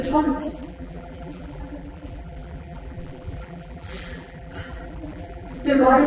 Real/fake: fake